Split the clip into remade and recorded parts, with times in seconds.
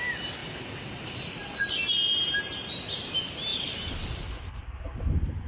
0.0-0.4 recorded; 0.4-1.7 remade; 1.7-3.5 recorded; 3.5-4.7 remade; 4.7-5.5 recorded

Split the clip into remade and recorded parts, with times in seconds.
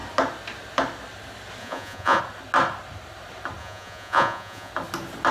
0.0-1.6 recorded; 1.6-2.2 remade; 2.2-3.6 recorded; 3.6-4.7 remade; 4.7-5.3 recorded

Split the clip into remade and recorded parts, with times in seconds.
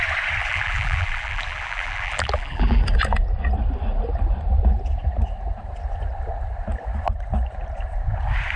0.0-0.4 recorded; 0.4-2.8 remade; 2.8-8.6 recorded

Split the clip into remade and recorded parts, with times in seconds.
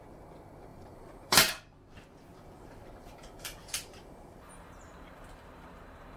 0.0-0.7 recorded; 0.7-1.5 remade; 1.5-2.3 recorded; 2.3-6.2 remade